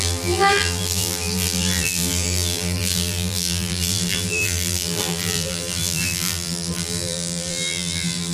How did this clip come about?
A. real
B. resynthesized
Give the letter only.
B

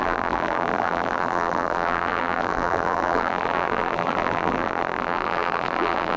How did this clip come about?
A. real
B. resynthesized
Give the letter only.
B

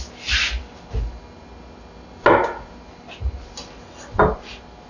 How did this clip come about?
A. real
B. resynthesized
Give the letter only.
A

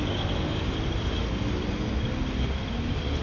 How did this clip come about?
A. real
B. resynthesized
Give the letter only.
A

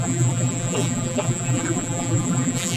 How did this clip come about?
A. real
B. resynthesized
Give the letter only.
B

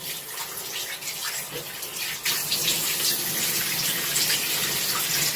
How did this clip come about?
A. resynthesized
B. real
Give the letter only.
B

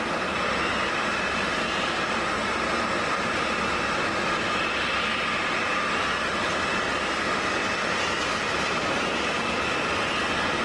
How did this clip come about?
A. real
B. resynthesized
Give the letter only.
A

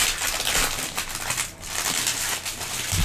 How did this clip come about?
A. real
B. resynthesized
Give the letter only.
A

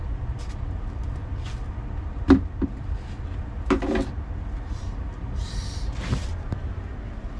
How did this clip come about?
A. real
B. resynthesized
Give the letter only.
B